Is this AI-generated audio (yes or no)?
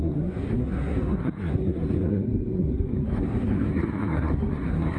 yes